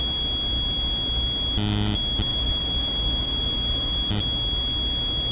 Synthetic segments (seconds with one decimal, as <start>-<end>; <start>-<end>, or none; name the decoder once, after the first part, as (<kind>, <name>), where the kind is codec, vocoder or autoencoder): 2.3-4.0 (vocoder, BigVGAN v2)